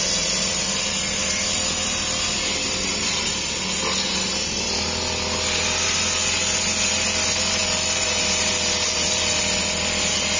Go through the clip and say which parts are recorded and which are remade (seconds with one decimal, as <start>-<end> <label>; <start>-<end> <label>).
0.0-10.4 recorded